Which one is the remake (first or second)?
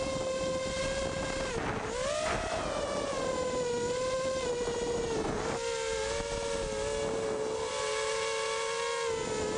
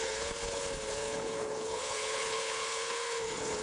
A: second